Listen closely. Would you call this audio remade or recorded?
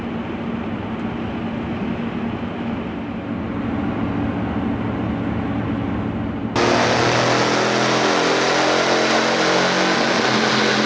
recorded